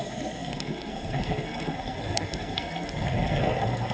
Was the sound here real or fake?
fake